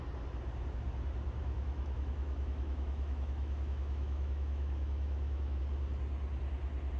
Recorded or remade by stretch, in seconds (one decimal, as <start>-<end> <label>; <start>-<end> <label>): 0.0-1.4 recorded; 1.4-5.6 remade; 5.6-7.0 recorded